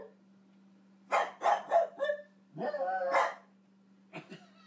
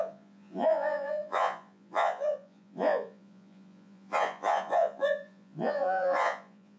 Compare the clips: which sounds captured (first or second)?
first